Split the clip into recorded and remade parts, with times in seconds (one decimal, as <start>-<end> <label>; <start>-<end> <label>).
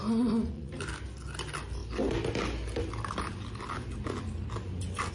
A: 0.0-0.7 remade; 0.7-5.1 recorded